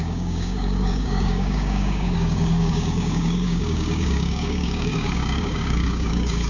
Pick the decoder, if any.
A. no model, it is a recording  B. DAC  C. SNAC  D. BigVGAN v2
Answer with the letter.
B